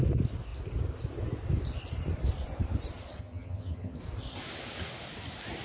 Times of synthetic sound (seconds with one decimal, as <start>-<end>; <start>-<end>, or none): 3.2-4.0